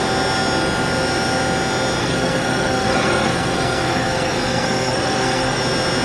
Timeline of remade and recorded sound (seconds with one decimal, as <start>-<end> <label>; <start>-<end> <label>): 0.0-2.0 recorded; 2.0-5.6 remade; 5.6-6.0 recorded